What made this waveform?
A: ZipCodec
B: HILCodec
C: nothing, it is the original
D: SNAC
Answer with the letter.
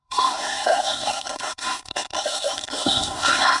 D